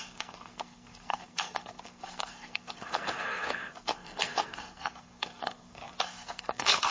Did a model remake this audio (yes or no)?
yes